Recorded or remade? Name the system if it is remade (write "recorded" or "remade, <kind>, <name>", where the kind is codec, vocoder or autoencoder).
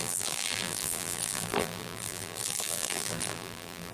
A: remade, vocoder, BigVGAN v2